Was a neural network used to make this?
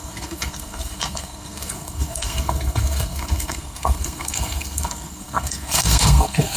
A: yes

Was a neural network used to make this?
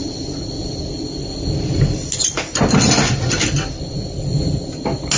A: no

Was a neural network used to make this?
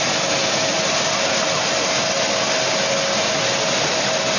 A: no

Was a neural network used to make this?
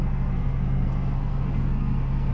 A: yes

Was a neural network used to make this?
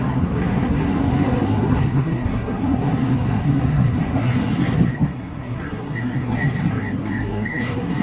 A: yes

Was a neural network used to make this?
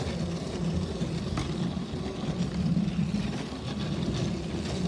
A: no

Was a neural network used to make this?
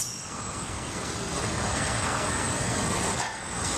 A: yes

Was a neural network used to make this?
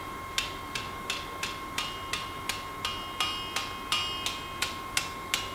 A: no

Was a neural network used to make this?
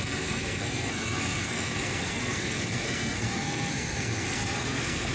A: yes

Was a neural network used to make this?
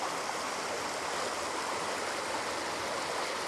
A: no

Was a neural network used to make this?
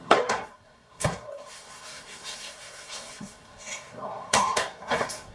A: yes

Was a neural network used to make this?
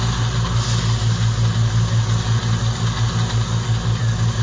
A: no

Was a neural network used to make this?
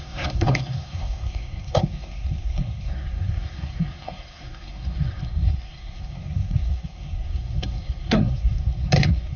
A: yes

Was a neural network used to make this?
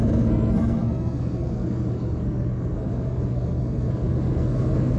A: yes